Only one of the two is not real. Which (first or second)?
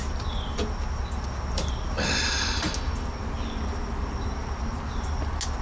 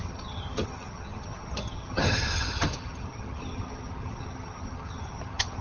second